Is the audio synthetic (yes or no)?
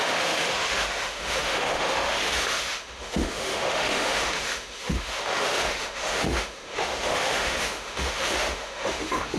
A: yes